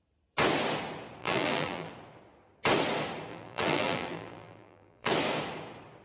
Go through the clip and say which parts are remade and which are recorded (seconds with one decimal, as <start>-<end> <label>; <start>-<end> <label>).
0.0-1.2 recorded; 1.2-1.9 remade; 1.9-3.3 recorded; 3.3-5.1 remade; 5.1-6.0 recorded